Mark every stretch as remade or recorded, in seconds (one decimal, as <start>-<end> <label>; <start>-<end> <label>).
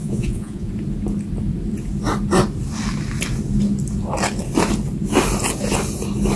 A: 0.0-0.7 remade; 0.7-6.4 recorded